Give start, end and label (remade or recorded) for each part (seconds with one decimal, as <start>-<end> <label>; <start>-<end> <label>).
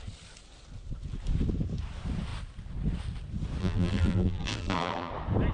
0.0-3.6 recorded; 3.6-5.1 remade; 5.1-5.5 recorded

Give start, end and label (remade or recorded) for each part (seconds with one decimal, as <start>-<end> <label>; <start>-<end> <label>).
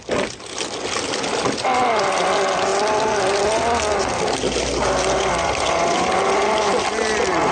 0.0-7.5 recorded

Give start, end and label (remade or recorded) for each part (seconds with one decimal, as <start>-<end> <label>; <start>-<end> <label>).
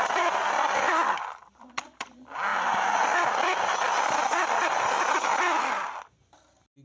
0.0-6.8 recorded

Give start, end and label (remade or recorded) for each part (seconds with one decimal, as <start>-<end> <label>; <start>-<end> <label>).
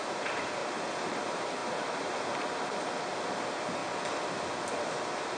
0.0-0.6 remade; 0.6-1.2 recorded; 1.2-3.8 remade; 3.8-5.0 recorded; 5.0-5.4 remade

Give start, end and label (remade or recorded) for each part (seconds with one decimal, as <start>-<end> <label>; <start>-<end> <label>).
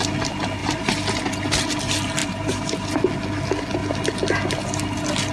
0.0-0.6 recorded; 0.6-1.2 remade; 1.2-2.2 recorded; 2.2-3.0 remade; 3.0-5.3 recorded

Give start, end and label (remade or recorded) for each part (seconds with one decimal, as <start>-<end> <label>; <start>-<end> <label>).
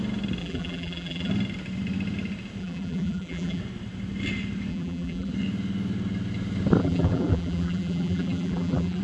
0.0-0.4 recorded; 0.4-1.3 remade; 1.3-2.6 recorded; 2.6-3.6 remade; 3.6-4.7 recorded; 4.7-5.3 remade; 5.3-6.8 recorded; 6.8-9.0 remade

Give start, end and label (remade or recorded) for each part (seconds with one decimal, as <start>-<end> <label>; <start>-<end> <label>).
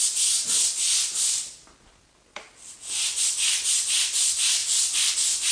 0.0-4.6 recorded; 4.6-5.1 remade; 5.1-5.5 recorded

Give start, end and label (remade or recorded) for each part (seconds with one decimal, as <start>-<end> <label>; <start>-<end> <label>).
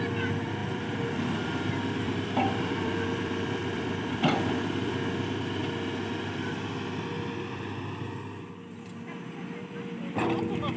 0.0-0.6 recorded; 0.6-4.9 remade; 4.9-10.8 recorded